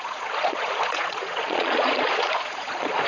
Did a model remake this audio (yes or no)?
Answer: yes